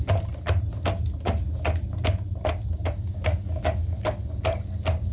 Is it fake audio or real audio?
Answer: real